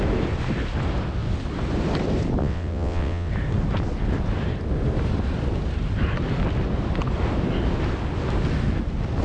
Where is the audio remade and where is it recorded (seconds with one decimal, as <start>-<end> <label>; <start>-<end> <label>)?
0.0-2.4 recorded; 2.4-3.3 remade; 3.3-9.2 recorded